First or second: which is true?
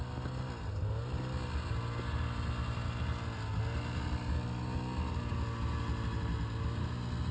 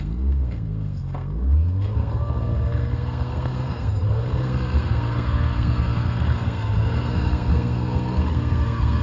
first